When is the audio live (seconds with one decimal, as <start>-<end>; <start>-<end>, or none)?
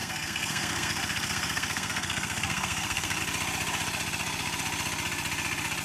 3.2-5.8